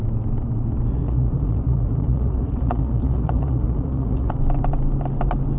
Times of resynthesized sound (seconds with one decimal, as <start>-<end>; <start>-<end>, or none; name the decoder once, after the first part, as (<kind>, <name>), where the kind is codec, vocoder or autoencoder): 0.9-4.3 (vocoder, Vocos)